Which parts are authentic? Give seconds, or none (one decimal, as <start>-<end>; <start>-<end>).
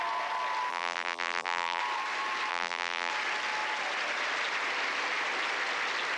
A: 0.0-0.7; 1.8-2.5; 3.1-6.2